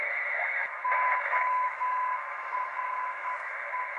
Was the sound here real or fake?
fake